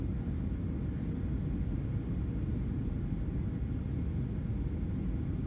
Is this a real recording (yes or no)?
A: yes